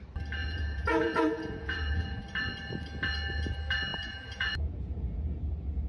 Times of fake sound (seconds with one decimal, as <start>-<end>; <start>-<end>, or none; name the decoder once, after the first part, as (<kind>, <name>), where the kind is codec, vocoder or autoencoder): 0.4-2.2 (vocoder, Vocos); 3.9-5.4